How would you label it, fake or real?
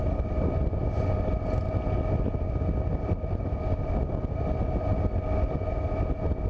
real